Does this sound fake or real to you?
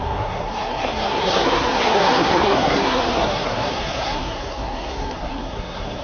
fake